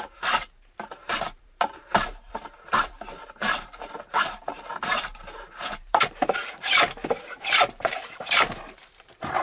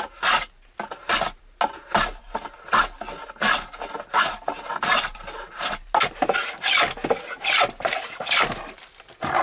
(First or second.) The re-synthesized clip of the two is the first